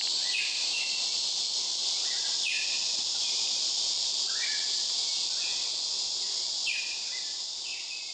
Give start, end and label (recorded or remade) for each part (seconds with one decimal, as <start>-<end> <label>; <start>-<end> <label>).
0.0-3.2 recorded; 3.2-4.2 remade; 4.2-6.6 recorded; 6.6-7.4 remade; 7.4-8.1 recorded